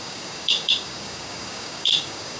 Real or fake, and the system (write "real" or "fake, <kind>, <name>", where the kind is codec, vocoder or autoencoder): fake, codec, DAC